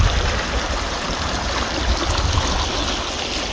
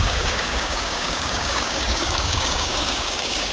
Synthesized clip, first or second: second